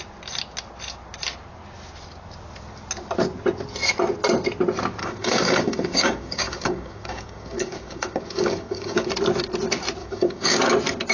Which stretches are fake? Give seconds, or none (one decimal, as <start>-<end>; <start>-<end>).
5.0-9.1; 10.0-10.6

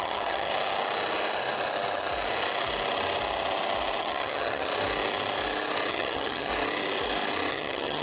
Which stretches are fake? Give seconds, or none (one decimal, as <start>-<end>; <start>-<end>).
0.0-0.5; 4.0-4.7; 5.9-6.5; 7.5-8.0

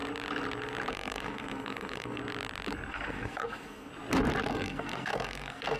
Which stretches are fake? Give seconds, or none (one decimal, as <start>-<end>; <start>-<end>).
0.9-2.2; 2.9-3.9; 4.5-5.8

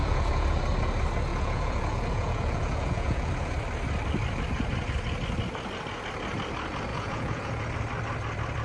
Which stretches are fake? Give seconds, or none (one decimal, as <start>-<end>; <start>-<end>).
0.0-0.6; 1.3-3.3; 6.9-7.6

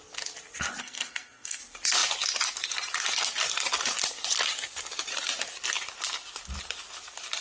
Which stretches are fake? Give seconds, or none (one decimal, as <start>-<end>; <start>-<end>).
0.8-1.6

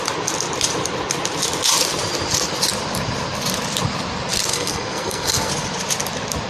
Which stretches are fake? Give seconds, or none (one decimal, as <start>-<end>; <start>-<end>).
4.5-5.5

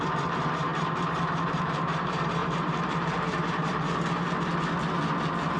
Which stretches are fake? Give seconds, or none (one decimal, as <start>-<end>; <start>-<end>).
0.0-4.5

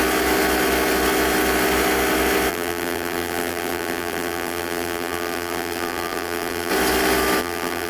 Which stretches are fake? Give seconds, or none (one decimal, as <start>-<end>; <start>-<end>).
2.5-6.7; 7.4-7.9